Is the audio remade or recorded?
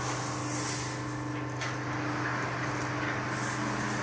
recorded